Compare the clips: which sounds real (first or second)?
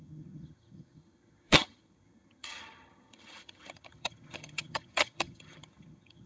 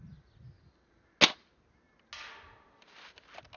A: second